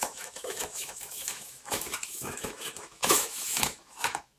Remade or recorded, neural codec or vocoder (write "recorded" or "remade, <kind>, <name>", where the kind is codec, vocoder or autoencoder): remade, autoencoder, DAC-VAE